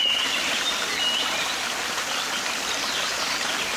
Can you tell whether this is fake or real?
real